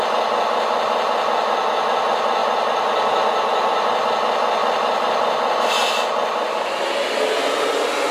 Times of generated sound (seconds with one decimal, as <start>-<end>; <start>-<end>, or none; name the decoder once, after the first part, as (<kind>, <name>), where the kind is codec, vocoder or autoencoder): 4.6-5.6 (vocoder, BigVGAN v2)